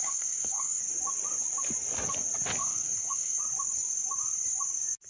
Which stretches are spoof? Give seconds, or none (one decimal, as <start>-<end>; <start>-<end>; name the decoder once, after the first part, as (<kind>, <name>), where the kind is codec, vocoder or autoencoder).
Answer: 0.0-0.8 (codec, SNAC); 2.6-3.4